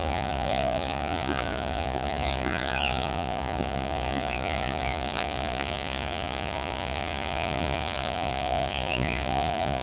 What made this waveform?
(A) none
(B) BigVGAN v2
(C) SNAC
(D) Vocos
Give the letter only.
D